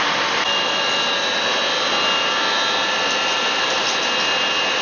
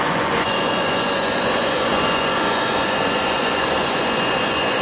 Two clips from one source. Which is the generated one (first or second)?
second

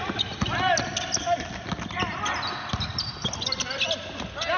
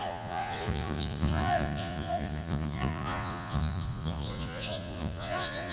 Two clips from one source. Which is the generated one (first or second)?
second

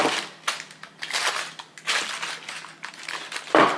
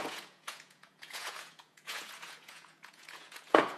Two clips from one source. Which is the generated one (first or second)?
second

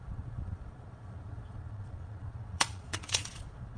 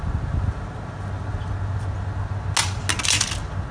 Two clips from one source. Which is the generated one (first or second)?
first